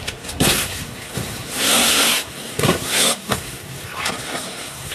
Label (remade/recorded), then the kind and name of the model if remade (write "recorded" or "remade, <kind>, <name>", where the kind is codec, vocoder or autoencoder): remade, codec, SNAC